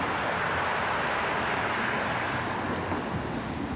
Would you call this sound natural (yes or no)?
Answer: yes